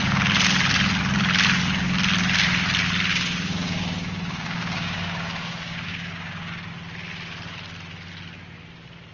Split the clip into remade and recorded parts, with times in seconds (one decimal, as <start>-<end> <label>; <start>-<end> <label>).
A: 0.0-3.1 recorded; 3.1-6.7 remade; 6.7-9.1 recorded